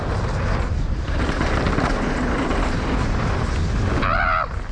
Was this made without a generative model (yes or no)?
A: yes